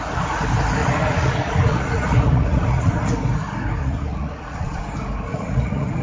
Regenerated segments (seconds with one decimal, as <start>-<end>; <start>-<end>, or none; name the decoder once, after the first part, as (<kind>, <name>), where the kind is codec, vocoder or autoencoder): 0.8-3.1 (vocoder, Vocos); 3.8-4.8; 5.3-6.0